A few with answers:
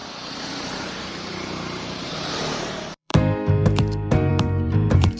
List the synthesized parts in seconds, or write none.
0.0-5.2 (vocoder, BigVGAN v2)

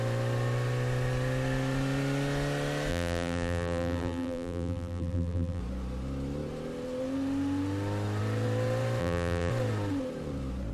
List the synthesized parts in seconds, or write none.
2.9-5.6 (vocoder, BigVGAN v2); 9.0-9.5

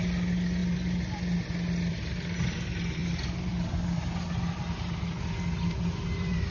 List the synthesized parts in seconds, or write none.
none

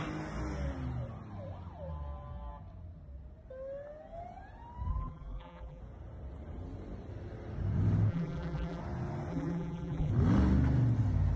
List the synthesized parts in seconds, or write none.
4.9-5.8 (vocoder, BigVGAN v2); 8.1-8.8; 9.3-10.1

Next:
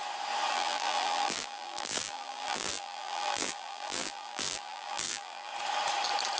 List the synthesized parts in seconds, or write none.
0.5-5.5 (vocoder, BigVGAN v2)

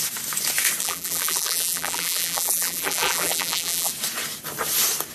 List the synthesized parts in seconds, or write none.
0.8-3.9 (vocoder, BigVGAN v2)

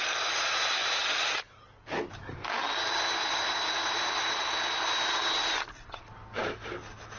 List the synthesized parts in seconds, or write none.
0.8-2.0 (vocoder, BigVGAN v2); 3.2-4.5

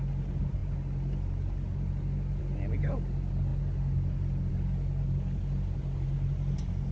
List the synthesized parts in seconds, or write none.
none